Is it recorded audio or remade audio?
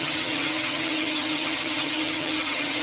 remade